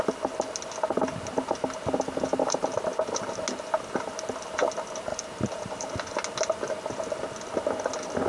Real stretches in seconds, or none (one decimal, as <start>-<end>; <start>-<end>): 0.0-5.1; 5.9-8.3